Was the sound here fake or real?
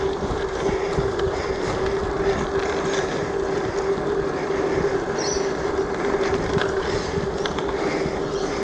real